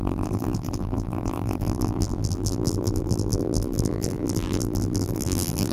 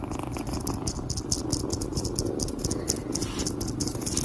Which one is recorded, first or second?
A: second